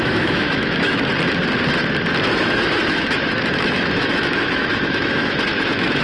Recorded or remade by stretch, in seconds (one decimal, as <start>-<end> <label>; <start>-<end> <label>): 0.0-1.1 remade; 1.1-2.3 recorded; 2.3-6.0 remade